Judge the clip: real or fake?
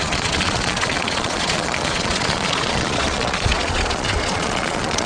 fake